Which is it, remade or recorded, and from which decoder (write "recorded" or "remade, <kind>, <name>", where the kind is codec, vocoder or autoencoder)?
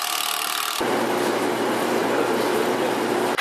recorded